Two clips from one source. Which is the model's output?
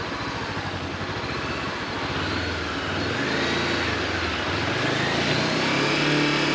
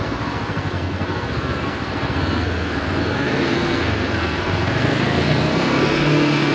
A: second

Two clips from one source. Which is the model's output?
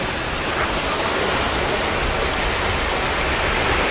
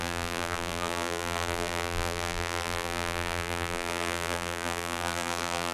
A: second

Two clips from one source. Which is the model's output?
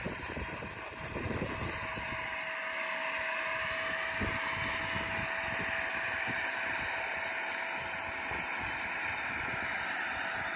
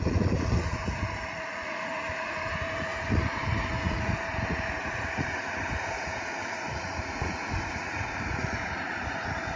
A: second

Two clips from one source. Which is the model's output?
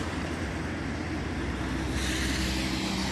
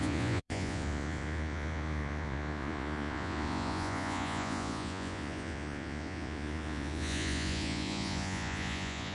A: second